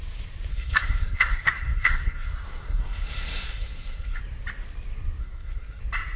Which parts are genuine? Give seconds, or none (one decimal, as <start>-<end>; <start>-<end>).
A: 0.0-0.5; 4.2-5.2; 5.8-6.2